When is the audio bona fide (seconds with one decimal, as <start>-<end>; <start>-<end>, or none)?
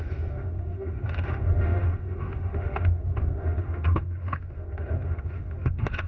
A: none